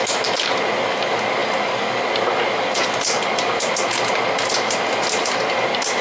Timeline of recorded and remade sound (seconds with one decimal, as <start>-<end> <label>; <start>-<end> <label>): 0.0-6.0 recorded